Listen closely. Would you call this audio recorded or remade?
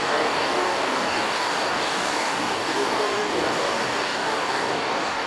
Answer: remade